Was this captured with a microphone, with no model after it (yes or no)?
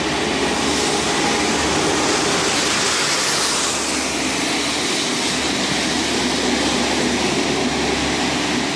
yes